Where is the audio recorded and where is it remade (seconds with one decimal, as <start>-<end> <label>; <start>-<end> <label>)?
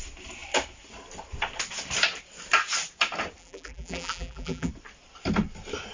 0.0-3.4 recorded; 3.4-4.7 remade; 4.7-5.9 recorded